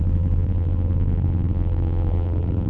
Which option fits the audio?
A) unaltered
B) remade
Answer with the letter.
B